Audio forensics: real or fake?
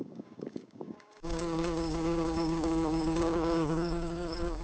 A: fake